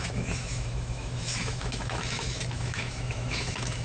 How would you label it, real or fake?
fake